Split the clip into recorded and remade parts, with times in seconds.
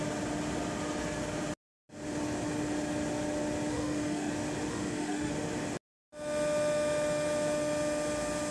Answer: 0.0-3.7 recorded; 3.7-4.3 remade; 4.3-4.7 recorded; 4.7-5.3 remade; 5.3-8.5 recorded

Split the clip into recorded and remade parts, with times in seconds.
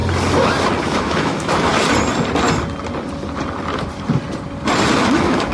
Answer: 0.0-0.8 recorded; 0.8-1.7 remade; 1.7-5.0 recorded; 5.0-5.5 remade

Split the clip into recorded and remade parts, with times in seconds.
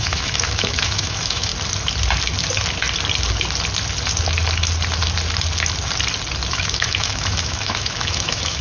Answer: 0.0-1.5 remade; 1.5-6.5 recorded; 6.5-8.6 remade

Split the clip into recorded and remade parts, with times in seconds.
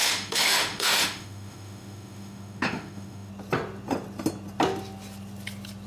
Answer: 0.0-3.3 remade; 3.3-5.9 recorded